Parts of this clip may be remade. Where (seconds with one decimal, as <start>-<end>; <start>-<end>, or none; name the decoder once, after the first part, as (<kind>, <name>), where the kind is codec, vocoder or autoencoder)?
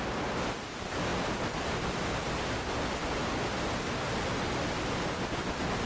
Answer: none